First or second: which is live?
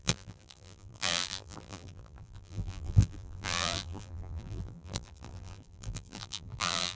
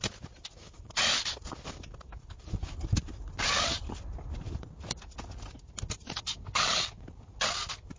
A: second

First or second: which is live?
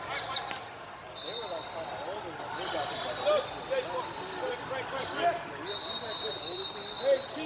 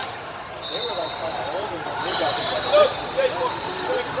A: first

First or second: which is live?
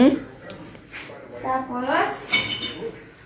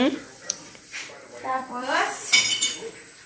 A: first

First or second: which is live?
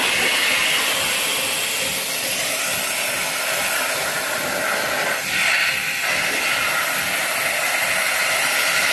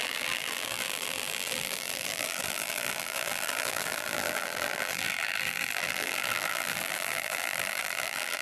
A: first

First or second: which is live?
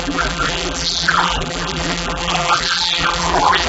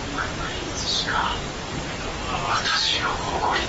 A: second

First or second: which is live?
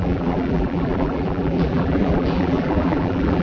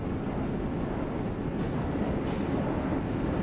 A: second